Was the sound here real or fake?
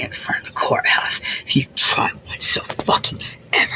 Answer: real